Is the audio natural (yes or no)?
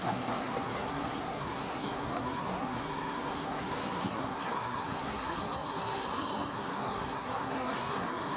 no